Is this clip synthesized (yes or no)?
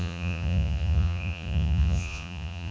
yes